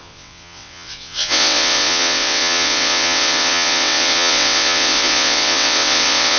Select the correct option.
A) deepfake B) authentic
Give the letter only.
A